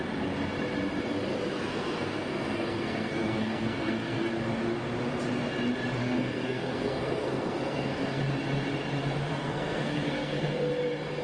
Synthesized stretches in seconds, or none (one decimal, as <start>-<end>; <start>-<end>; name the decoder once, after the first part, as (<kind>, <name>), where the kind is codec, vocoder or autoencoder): 1.7-4.3 (codec, SNAC); 6.0-8.2; 9.3-10.7